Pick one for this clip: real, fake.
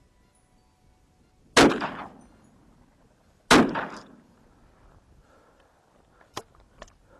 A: real